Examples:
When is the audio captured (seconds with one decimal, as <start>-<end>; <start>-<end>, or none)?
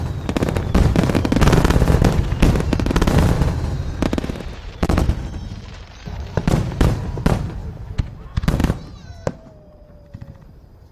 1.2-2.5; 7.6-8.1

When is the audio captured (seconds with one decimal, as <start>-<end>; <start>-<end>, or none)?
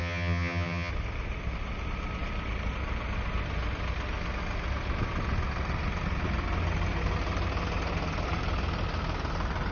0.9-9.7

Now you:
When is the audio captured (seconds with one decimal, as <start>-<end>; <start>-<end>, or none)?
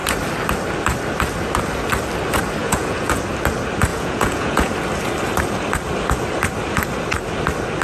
0.0-2.6; 3.2-3.9; 4.7-7.8